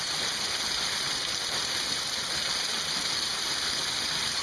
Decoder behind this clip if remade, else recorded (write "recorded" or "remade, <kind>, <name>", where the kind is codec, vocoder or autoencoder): recorded